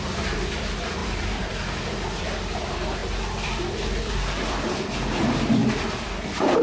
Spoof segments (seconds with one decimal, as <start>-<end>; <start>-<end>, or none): 0.0-6.6